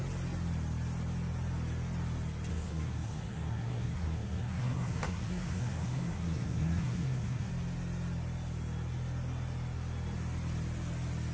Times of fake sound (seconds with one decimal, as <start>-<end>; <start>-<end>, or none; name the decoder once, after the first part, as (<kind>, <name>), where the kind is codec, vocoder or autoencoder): 2.5-7.5 (codec, SNAC)